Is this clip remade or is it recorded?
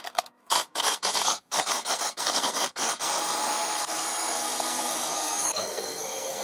remade